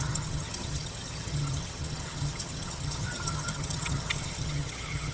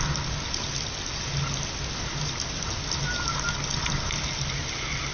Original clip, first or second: second